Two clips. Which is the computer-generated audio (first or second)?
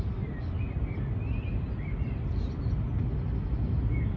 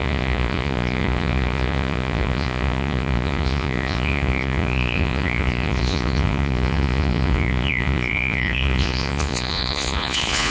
second